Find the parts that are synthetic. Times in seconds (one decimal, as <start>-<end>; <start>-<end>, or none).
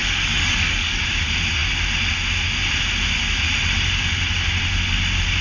0.0-1.0